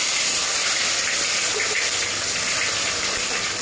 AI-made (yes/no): yes